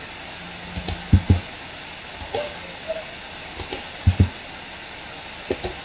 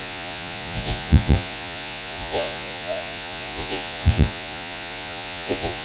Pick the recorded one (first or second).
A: first